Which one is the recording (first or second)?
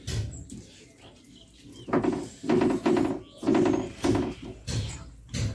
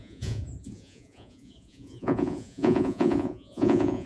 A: first